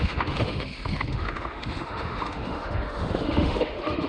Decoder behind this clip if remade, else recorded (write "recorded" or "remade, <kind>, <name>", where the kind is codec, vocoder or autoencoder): remade, autoencoder, DAC-VAE